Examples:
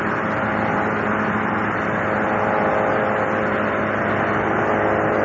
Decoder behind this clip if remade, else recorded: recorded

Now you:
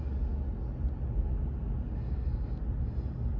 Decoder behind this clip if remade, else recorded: recorded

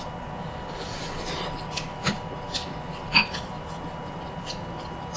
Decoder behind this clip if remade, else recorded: recorded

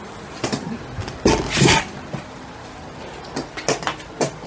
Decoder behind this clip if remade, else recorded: recorded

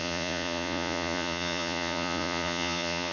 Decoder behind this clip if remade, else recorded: remade, vocoder, Vocos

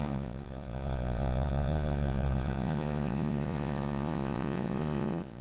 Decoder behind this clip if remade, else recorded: remade, vocoder, Vocos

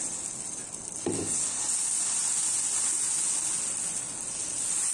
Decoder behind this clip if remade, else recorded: recorded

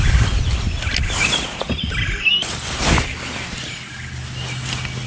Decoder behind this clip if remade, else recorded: recorded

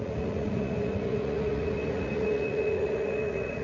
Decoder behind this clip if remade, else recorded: remade, vocoder, Vocos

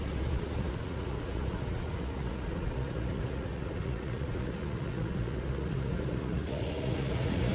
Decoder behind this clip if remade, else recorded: remade, vocoder, Vocos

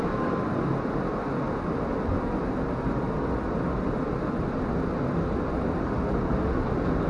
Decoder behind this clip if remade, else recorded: recorded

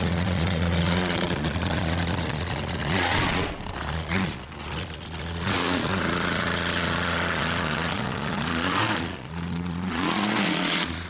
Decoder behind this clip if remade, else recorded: remade, vocoder, Vocos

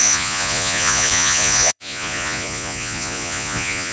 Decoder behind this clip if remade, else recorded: remade, vocoder, Vocos